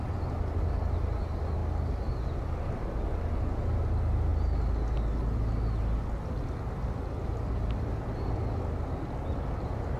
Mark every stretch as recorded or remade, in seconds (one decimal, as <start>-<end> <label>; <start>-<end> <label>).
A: 0.0-10.0 recorded